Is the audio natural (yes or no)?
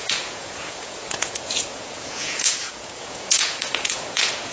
no